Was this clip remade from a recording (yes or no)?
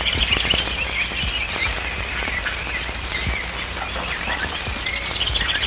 no